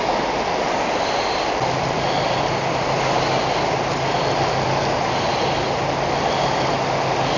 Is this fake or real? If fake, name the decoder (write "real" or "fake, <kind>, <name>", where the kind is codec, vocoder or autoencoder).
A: real